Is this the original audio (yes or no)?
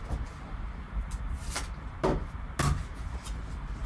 yes